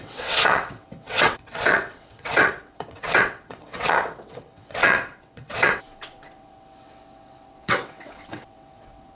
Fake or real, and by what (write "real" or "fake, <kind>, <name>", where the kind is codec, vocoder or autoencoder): fake, vocoder, WaveNeXt